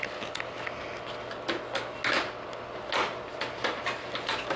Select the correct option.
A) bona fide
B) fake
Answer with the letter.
A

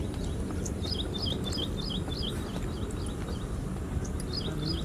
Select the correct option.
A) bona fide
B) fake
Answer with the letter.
A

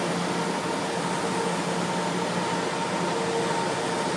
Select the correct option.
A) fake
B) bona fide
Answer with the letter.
B